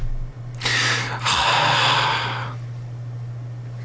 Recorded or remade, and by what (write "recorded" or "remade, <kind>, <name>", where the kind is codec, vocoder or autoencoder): recorded